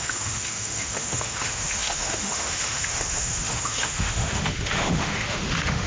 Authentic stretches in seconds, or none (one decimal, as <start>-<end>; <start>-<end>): none